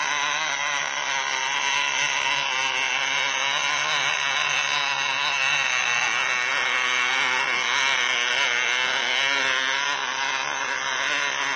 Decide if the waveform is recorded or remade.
recorded